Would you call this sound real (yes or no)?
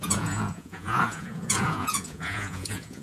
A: no